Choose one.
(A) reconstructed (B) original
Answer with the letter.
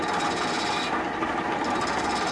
B